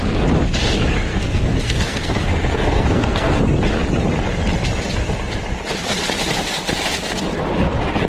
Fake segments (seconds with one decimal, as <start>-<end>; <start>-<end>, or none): 1.1-3.4

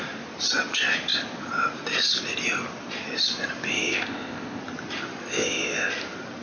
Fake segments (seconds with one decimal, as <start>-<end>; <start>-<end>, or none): 3.7-4.6; 5.3-5.9

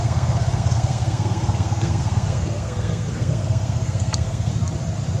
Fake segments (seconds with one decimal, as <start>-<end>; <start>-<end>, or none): 0.0-4.5

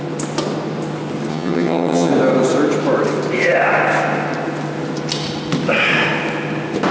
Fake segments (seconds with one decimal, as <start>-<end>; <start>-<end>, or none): 1.3-2.1

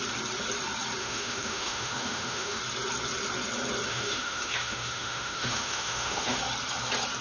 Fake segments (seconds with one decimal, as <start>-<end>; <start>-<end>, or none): 1.0-2.6; 3.9-6.4

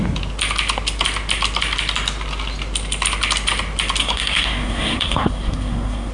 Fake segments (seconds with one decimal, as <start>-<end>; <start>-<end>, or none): 4.0-6.1

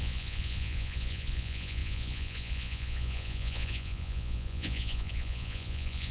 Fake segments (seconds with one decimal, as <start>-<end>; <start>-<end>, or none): 0.0-6.1